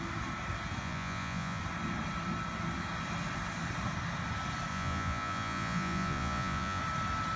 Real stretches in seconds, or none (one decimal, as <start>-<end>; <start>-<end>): 0.0-0.8; 1.6-4.7; 6.8-7.4